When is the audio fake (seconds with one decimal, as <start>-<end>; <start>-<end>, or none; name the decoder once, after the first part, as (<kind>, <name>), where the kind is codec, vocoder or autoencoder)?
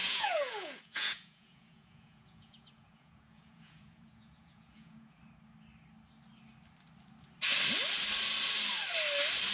0.0-5.2 (vocoder, Vocos)